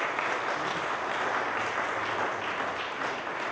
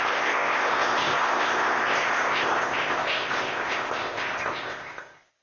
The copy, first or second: second